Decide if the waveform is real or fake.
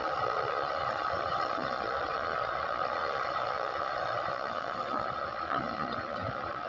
fake